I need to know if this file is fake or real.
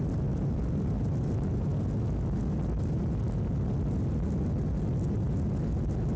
real